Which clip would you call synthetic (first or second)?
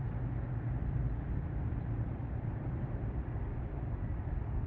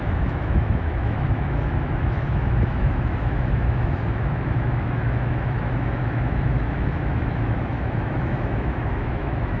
second